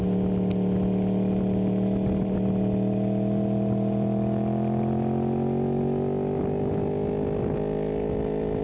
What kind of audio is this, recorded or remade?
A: recorded